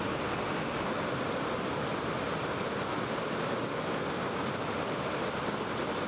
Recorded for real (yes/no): yes